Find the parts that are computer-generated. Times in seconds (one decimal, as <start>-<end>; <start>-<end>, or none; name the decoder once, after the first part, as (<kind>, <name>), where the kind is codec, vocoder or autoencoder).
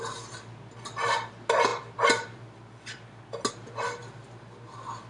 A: none